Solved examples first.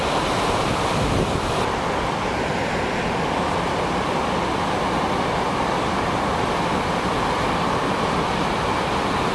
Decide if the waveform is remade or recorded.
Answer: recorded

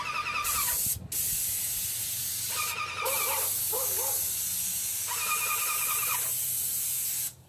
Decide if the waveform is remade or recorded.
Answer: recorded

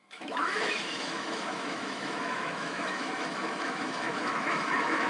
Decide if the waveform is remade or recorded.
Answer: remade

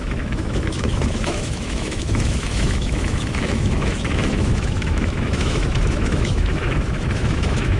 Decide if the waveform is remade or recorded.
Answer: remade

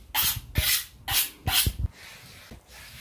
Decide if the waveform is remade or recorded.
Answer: recorded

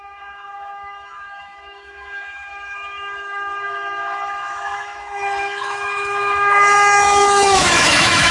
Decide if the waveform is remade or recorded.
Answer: remade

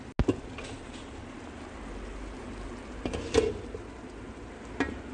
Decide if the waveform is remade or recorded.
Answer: recorded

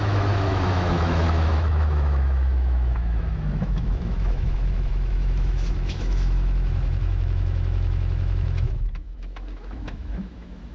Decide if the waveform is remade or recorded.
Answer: remade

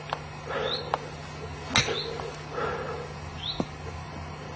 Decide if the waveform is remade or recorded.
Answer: recorded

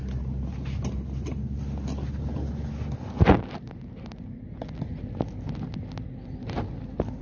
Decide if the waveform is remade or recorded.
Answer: recorded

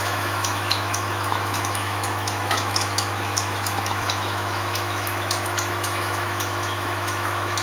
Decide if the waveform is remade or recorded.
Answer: remade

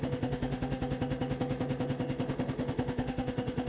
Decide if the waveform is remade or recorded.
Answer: remade